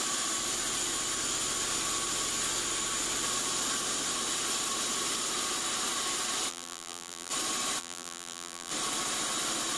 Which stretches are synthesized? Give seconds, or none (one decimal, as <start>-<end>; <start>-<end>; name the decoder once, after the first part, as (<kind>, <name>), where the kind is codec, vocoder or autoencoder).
6.5-7.3 (vocoder, BigVGAN v2); 7.8-8.7

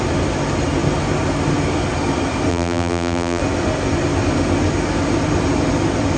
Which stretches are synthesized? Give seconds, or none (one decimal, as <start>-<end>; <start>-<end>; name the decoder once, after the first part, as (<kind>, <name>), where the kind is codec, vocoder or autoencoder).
2.5-3.4 (vocoder, BigVGAN v2)

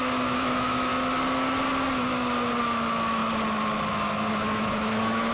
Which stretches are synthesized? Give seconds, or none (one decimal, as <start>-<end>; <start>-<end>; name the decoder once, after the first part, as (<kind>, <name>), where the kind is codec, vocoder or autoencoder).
0.0-0.9 (autoencoder, DAC-VAE); 2.6-3.2; 3.9-5.3

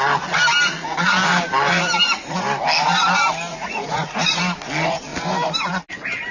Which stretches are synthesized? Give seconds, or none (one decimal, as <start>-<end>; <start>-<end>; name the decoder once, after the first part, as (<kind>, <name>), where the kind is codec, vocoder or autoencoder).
3.5-4.4 (vocoder, Vocos)